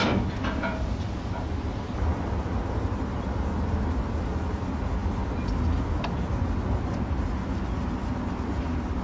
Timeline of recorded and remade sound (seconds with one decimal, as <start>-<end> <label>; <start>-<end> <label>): 0.0-9.0 recorded

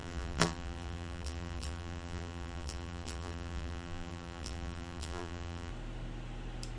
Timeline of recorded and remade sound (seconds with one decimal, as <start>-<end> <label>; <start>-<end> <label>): 0.0-5.7 remade; 5.7-6.8 recorded

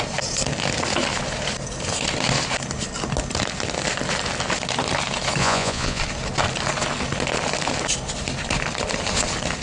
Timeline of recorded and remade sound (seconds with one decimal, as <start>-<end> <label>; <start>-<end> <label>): 0.0-5.4 recorded; 5.4-6.0 remade; 6.0-9.6 recorded

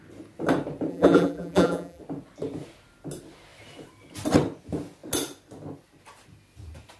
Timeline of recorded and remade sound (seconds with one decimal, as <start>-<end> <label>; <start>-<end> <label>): 0.0-0.9 recorded; 0.9-2.0 remade; 2.0-7.0 recorded

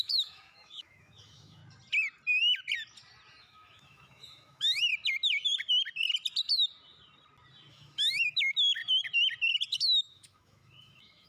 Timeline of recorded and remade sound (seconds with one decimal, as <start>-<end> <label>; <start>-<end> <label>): 0.0-1.6 remade; 1.6-3.4 recorded; 3.4-4.9 remade; 4.9-7.7 recorded; 7.7-8.8 remade; 8.8-9.8 recorded; 9.8-11.3 remade

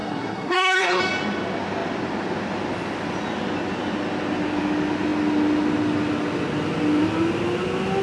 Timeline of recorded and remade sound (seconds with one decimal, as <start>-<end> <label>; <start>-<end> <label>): 0.0-1.0 remade; 1.0-8.0 recorded